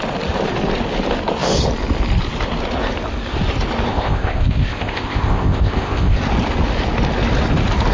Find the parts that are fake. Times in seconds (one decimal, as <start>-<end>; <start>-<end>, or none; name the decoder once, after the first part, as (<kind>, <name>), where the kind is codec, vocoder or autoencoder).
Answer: 3.9-6.2 (codec, ZipCodec)